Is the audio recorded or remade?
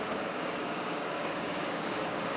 remade